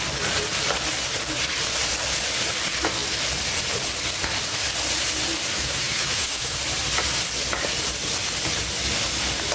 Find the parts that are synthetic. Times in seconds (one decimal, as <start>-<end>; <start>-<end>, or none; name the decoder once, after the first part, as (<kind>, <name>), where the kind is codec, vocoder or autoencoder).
5.5-6.6 (autoencoder, DAC-VAE)

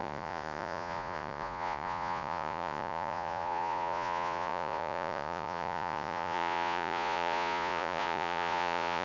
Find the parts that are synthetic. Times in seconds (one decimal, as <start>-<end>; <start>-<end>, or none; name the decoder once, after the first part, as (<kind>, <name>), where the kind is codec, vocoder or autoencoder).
0.0-9.0 (vocoder, Vocos)

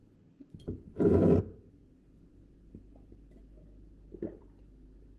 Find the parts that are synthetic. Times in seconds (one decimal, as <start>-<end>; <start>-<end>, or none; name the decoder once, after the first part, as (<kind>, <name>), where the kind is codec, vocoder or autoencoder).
none

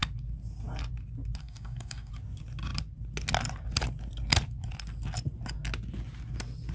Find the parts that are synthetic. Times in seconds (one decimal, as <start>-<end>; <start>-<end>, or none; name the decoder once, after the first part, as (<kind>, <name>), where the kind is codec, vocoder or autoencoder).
1.4-2.1 (codec, DAC)

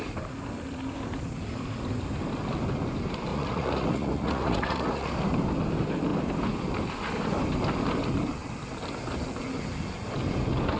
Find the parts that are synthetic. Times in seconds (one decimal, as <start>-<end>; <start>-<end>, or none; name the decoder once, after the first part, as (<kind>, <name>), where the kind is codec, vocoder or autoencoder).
3.3-5.1 (vocoder, Vocos)

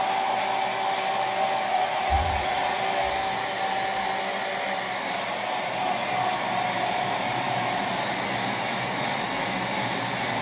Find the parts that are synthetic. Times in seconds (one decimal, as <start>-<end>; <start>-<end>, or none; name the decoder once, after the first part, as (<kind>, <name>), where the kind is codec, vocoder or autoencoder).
1.7-2.8 (vocoder, Vocos)